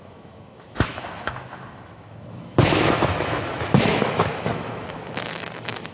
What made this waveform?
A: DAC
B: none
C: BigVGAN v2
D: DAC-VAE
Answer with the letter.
D